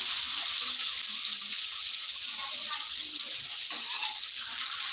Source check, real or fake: real